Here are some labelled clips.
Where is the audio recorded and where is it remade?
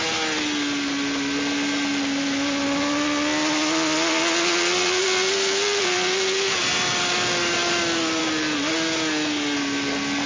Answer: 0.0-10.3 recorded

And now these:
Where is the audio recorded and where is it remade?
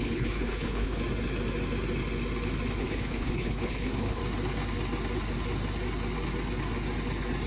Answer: 0.0-1.0 remade; 1.0-2.8 recorded; 2.8-4.2 remade; 4.2-7.5 recorded